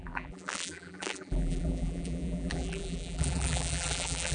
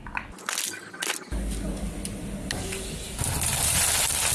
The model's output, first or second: first